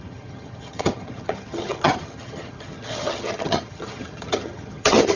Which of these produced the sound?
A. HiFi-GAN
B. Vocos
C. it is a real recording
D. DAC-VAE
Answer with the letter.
A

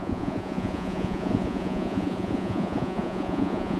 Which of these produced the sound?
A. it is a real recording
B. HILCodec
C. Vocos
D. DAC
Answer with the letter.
C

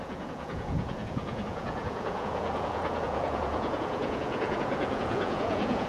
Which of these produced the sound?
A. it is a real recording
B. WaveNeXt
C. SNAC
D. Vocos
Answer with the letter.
D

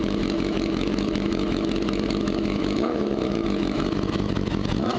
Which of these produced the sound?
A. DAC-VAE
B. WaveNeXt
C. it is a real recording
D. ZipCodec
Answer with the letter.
A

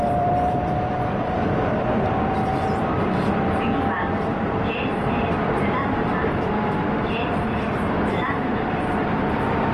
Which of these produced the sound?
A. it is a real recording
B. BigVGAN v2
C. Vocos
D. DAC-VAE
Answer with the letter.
B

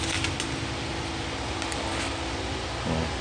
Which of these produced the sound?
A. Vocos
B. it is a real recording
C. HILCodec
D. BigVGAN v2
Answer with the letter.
B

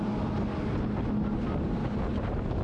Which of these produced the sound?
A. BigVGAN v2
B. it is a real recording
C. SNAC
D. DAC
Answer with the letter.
B